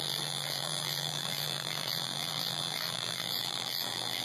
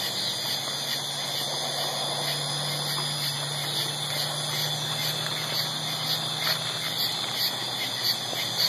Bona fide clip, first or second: second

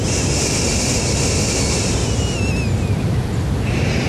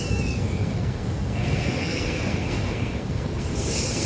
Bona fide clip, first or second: first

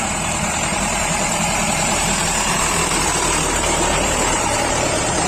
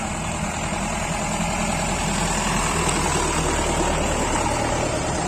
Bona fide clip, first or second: second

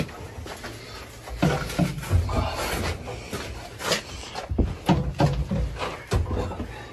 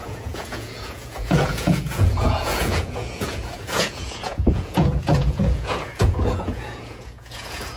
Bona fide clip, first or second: first